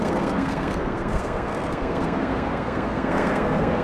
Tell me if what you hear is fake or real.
fake